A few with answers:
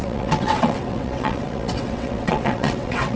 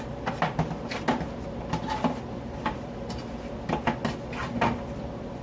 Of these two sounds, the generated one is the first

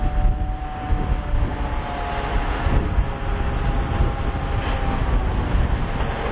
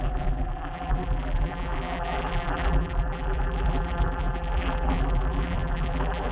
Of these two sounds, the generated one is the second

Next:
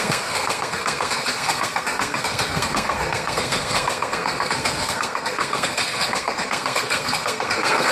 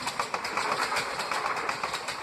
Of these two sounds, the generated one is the first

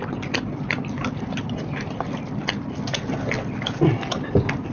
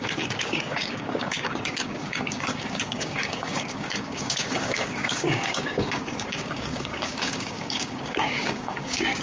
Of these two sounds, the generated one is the second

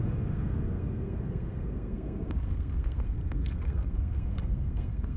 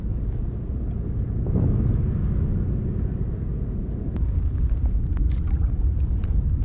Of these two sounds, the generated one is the first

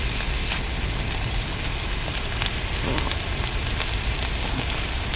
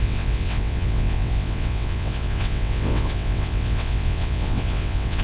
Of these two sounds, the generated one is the second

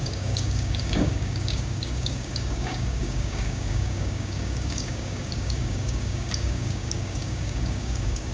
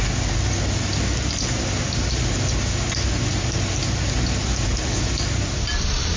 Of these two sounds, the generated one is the first